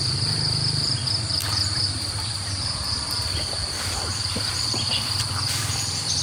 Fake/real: fake